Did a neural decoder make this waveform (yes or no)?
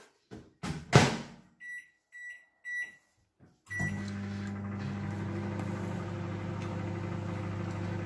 no